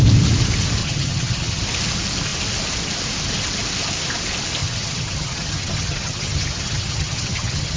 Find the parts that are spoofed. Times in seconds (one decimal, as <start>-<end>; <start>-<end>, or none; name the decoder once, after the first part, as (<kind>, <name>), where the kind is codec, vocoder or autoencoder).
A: 0.8-1.6 (vocoder, HiFi-GAN); 4.6-7.8